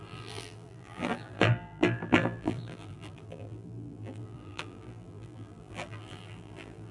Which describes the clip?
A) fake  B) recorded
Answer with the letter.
A